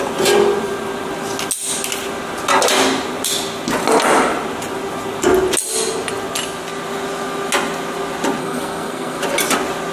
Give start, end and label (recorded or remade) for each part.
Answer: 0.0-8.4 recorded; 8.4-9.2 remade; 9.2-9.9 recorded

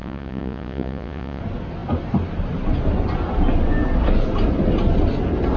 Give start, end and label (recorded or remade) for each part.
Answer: 0.0-1.4 remade; 1.4-5.6 recorded

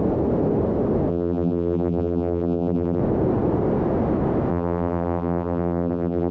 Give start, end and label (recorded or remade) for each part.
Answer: 0.0-1.1 recorded; 1.1-3.0 remade; 3.0-4.5 recorded; 4.5-6.3 remade